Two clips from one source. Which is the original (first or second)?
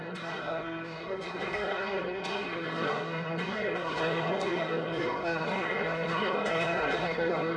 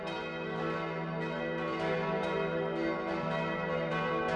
second